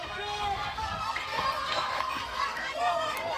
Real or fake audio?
fake